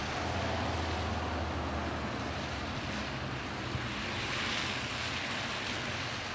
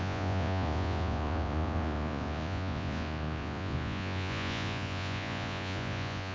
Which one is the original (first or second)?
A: first